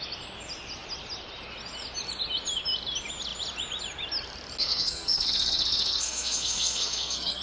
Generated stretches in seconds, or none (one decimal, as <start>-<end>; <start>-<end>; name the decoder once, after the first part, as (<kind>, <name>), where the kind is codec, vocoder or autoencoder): 4.6-7.4 (codec, SNAC)